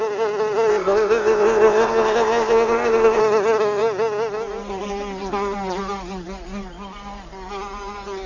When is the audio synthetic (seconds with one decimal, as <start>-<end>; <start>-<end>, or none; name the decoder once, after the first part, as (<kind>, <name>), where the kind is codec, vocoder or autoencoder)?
0.7-3.2 (codec, ZipCodec)